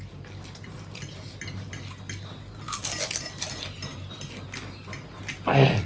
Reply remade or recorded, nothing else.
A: recorded